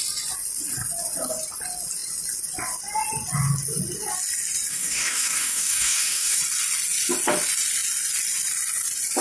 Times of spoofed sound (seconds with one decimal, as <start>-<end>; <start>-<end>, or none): 4.7-6.4